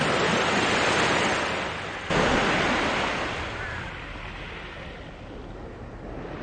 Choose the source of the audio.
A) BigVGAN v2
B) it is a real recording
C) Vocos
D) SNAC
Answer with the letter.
B